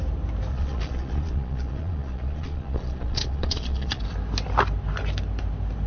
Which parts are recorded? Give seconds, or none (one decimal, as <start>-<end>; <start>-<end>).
0.0-0.5; 4.0-5.9